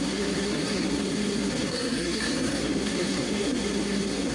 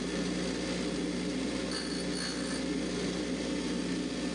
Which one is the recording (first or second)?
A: second